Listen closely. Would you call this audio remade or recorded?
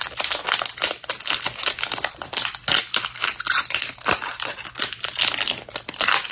recorded